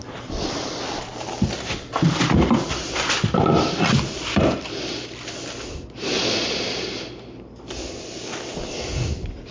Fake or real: real